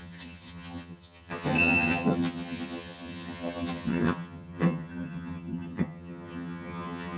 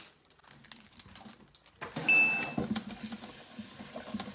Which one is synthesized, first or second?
first